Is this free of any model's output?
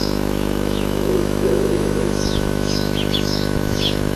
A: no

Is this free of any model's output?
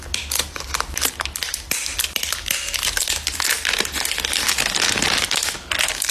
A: yes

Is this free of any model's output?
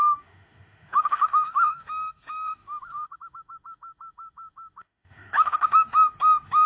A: no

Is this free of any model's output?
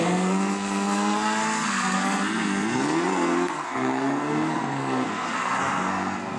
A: no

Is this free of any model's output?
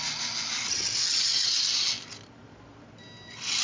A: yes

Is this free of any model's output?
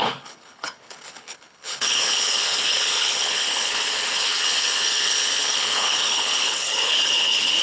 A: no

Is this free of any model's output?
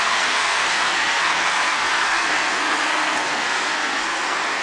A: no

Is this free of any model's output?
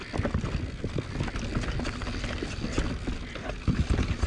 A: yes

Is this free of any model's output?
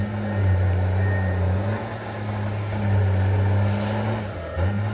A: yes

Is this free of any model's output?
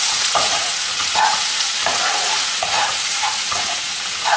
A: no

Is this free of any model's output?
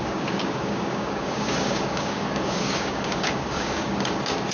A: no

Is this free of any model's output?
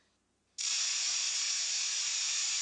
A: yes